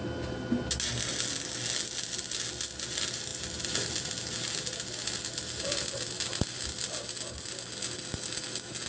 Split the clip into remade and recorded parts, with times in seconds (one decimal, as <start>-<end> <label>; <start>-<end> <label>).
0.0-8.9 recorded

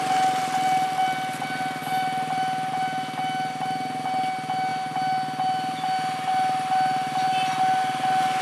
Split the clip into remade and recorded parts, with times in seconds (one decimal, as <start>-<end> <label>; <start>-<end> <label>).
0.0-8.4 recorded

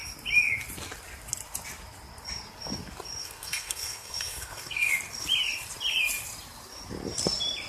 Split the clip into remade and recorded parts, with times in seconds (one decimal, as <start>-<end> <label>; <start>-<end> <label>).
0.0-3.2 recorded; 3.2-4.9 remade; 4.9-7.7 recorded

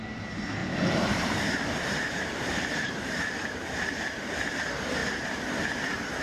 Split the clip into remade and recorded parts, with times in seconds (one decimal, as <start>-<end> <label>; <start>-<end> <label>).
0.0-0.6 recorded; 0.6-4.3 remade; 4.3-6.2 recorded

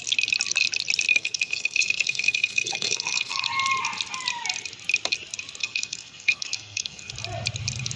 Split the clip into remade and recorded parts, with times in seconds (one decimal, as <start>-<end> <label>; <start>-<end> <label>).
0.0-1.1 recorded; 1.1-3.5 remade; 3.5-5.6 recorded; 5.6-7.1 remade; 7.1-8.0 recorded